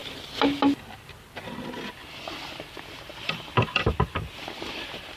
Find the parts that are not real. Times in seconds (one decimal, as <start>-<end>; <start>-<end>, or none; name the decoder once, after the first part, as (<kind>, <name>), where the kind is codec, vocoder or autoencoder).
3.1-5.2 (vocoder, BigVGAN v2)